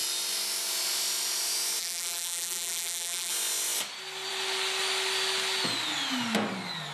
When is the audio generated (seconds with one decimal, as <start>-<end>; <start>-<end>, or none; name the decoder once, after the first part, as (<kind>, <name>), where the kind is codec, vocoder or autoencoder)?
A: 1.8-3.3 (vocoder, BigVGAN v2)